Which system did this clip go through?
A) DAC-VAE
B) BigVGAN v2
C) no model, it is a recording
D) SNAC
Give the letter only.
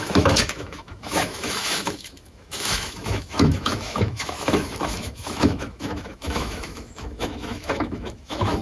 A